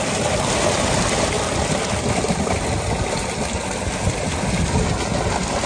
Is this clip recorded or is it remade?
recorded